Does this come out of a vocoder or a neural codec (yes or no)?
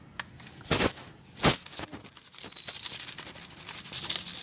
no